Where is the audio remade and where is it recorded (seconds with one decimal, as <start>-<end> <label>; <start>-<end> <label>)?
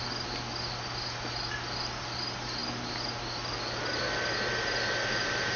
0.0-5.6 recorded